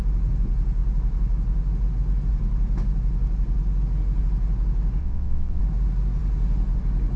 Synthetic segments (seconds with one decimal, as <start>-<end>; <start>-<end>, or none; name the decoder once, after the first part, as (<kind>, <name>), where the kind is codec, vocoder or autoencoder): 5.0-5.6 (vocoder, WaveNeXt)